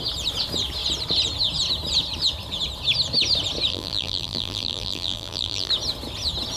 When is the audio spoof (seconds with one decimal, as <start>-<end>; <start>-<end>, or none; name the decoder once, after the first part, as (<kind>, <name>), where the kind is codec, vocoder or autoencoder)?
3.7-5.7 (vocoder, BigVGAN v2)